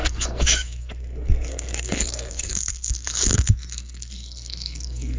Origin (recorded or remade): remade